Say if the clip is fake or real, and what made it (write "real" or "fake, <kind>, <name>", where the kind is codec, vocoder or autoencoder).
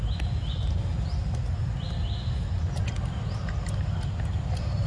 real